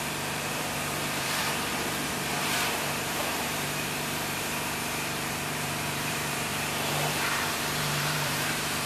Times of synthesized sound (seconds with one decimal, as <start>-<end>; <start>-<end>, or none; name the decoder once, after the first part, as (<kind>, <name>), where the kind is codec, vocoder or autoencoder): 0.0-1.4 (vocoder, BigVGAN v2); 2.4-6.5; 7.1-8.9